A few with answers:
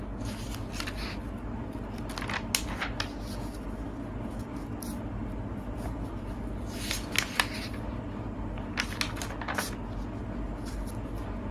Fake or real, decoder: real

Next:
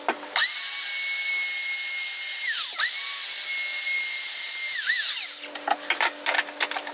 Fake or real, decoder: real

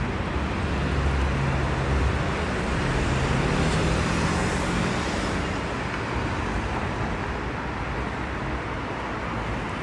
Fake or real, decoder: real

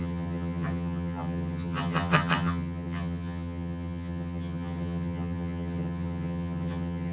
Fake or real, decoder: fake, vocoder, HiFi-GAN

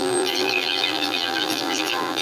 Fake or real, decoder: fake, vocoder, BigVGAN v2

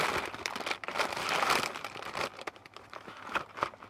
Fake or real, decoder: fake, vocoder, BigVGAN v2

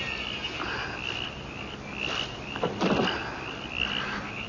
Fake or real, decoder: real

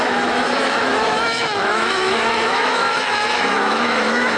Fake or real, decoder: fake, autoencoder, DAC-VAE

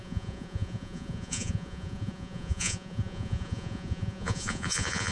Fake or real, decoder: fake, vocoder, Vocos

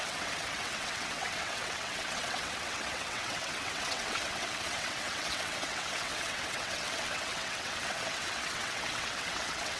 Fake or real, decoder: fake, vocoder, WaveNeXt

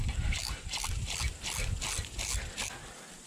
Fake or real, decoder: real